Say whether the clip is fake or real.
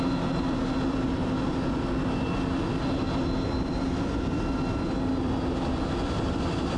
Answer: real